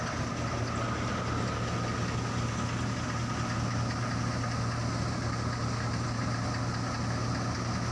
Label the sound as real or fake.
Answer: real